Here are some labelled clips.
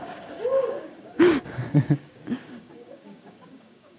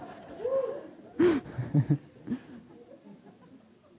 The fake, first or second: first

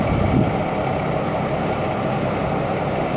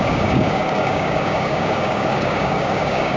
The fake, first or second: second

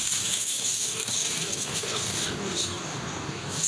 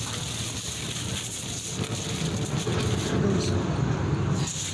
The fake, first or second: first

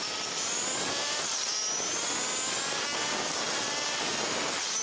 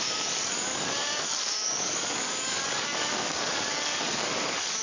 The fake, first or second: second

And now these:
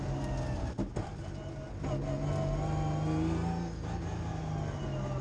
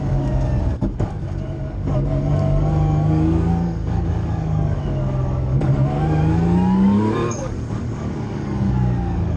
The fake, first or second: second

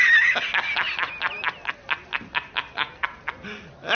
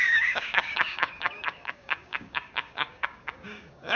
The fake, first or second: second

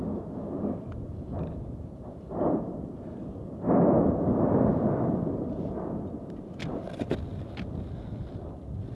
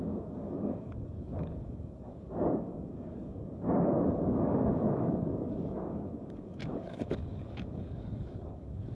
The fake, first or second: second